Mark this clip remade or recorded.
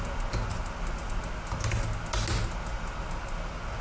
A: recorded